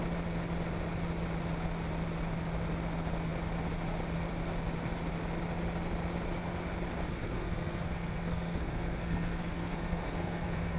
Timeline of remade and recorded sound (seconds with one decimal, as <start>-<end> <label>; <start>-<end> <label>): 0.0-7.1 recorded; 7.1-10.8 remade